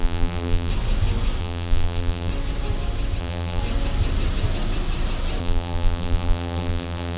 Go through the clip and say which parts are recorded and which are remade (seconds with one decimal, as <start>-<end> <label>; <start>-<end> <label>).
0.0-0.7 remade; 0.7-1.4 recorded; 1.4-2.3 remade; 2.3-3.2 recorded; 3.2-3.6 remade; 3.6-5.4 recorded; 5.4-7.2 remade